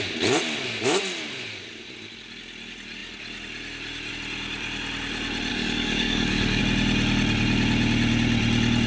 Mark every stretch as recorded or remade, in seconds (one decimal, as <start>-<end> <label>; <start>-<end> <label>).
0.0-5.5 recorded; 5.5-6.6 remade; 6.6-8.9 recorded